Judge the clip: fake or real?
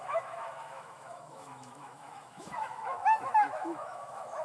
fake